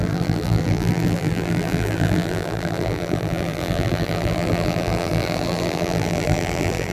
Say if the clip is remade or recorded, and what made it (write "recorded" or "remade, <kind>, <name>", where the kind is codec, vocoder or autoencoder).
remade, vocoder, BigVGAN v2